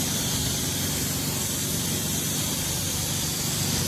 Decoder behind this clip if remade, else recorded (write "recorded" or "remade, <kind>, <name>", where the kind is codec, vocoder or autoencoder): remade, vocoder, BigVGAN v2